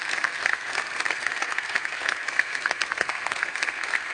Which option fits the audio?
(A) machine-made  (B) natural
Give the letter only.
A